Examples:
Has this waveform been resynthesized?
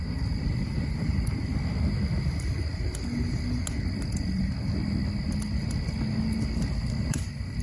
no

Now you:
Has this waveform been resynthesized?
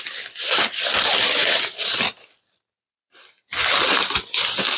no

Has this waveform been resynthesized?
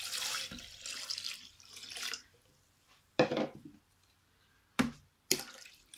yes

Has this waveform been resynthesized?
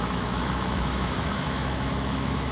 yes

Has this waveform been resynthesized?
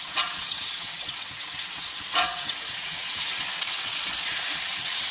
yes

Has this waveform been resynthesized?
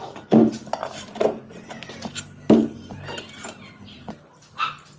no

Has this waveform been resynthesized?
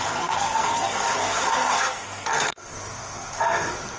yes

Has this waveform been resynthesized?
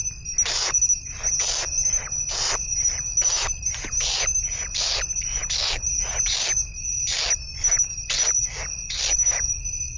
no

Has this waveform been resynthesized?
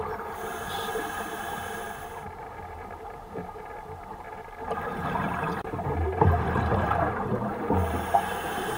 yes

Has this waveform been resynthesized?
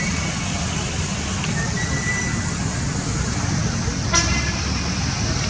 no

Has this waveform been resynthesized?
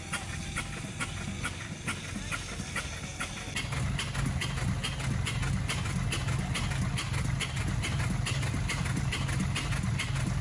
no